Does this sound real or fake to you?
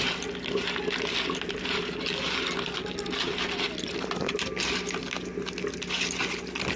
real